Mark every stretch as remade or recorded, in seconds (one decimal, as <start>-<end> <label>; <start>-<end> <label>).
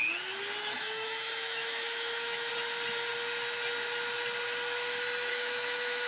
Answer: 0.0-0.6 recorded; 0.6-2.5 remade; 2.5-5.3 recorded; 5.3-6.1 remade